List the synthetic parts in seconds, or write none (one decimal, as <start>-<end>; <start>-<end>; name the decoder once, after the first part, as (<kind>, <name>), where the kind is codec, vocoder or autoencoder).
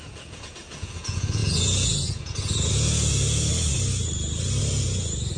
0.0-3.5 (vocoder, Vocos); 4.6-5.4